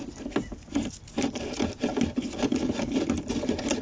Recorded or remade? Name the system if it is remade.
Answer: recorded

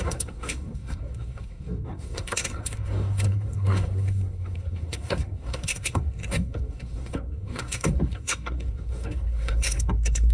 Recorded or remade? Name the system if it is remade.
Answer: remade, codec, SNAC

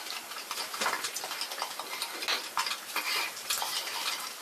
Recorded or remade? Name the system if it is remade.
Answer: recorded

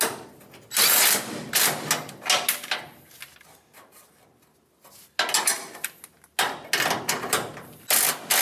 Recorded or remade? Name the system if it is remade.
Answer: recorded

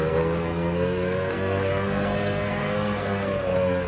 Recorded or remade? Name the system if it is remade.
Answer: remade, codec, SNAC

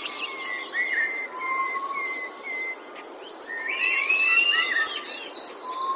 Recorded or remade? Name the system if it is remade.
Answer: recorded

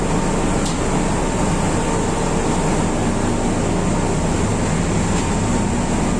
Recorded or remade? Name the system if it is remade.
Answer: recorded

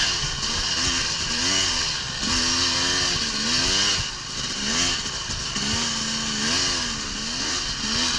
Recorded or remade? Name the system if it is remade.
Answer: recorded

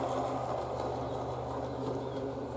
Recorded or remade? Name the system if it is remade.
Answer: recorded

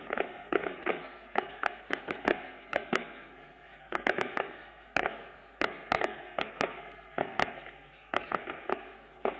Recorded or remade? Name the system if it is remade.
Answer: remade, codec, SNAC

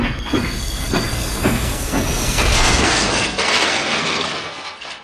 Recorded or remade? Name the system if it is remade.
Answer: remade, codec, SNAC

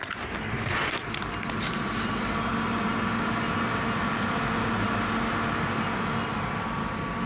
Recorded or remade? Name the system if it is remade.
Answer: recorded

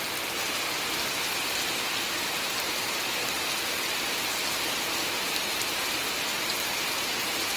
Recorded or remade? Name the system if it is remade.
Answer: recorded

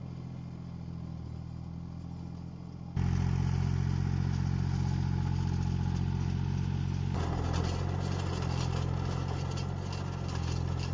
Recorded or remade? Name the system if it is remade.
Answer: recorded